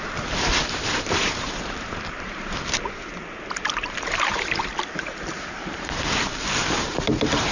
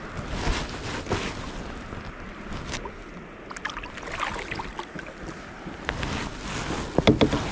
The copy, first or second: first